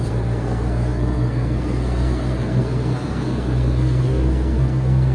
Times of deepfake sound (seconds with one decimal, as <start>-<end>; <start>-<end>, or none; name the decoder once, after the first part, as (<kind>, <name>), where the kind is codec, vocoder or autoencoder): 0.0-5.1 (codec, SNAC)